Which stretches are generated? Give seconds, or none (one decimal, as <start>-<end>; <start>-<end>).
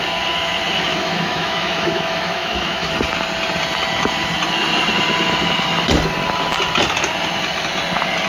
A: 0.9-2.9